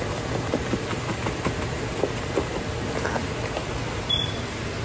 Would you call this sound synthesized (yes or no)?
no